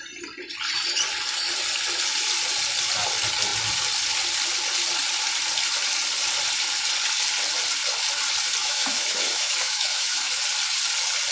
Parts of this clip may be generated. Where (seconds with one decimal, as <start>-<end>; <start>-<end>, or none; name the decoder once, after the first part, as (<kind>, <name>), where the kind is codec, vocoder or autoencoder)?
8.6-10.4 (autoencoder, DAC-VAE)